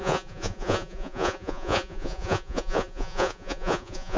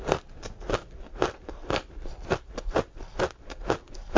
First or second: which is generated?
first